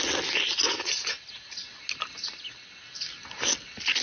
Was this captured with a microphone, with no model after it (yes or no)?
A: yes